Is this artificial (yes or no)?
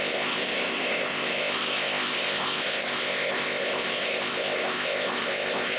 yes